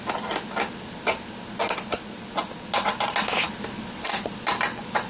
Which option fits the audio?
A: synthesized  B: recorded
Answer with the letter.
B